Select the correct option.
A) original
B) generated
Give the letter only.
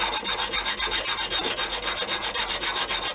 A